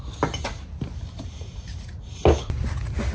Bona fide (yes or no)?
yes